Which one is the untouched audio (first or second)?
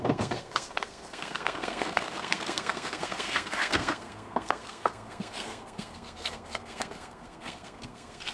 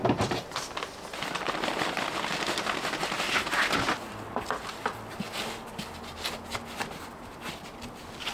second